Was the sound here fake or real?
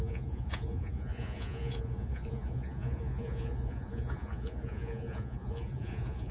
fake